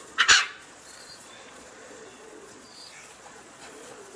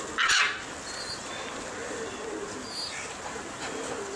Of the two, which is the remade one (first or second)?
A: first